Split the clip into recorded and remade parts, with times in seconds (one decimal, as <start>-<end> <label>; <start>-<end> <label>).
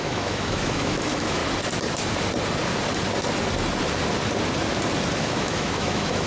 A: 0.0-1.4 remade; 1.4-5.2 recorded; 5.2-6.3 remade